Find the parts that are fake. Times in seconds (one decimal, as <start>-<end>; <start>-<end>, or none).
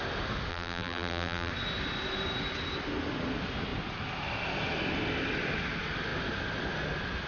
0.5-1.5